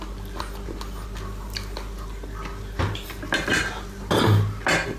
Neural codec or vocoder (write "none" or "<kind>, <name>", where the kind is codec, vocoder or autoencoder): none